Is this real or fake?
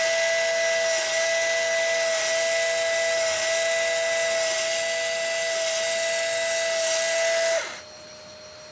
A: real